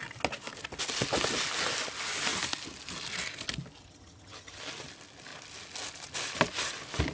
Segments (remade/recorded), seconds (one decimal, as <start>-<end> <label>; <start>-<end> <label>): 0.0-3.8 recorded; 3.8-4.6 remade; 4.6-7.1 recorded